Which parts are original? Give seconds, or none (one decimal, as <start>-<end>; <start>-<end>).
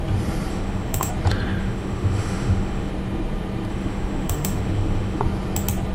0.0-0.5; 1.1-1.6; 2.9-3.7; 5.2-5.9